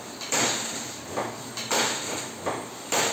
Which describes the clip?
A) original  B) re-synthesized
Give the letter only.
A